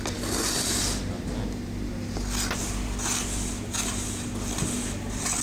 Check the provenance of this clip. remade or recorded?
recorded